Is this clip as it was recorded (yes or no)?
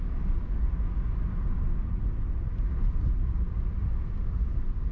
yes